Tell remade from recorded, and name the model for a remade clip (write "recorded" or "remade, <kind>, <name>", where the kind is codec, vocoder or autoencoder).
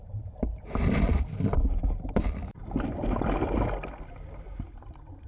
recorded